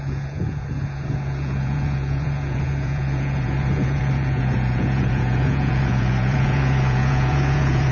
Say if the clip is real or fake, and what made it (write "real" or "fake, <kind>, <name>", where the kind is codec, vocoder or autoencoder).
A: fake, vocoder, Vocos